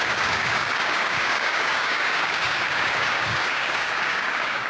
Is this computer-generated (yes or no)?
yes